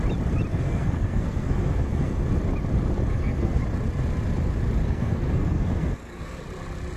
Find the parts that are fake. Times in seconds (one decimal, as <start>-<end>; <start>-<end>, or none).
0.5-2.2; 3.1-3.6; 4.8-6.4